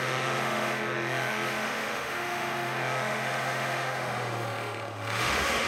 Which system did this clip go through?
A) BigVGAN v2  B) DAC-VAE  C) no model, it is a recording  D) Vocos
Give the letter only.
B